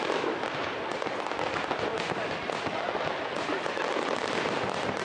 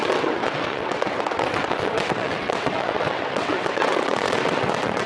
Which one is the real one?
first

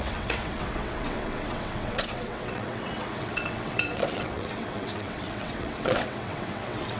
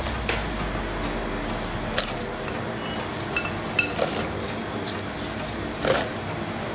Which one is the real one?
second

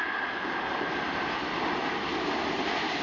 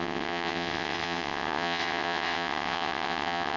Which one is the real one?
first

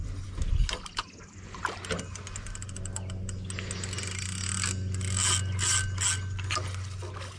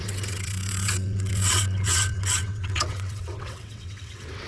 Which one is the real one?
first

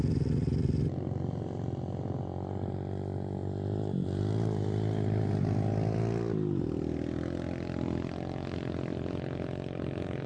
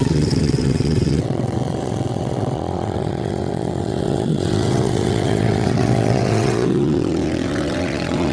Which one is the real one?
first